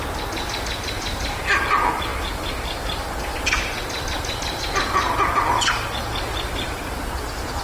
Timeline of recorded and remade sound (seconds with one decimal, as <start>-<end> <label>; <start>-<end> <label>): 0.0-7.6 recorded